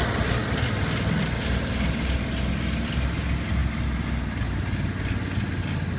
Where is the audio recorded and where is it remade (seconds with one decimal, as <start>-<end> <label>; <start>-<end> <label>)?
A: 0.0-6.0 recorded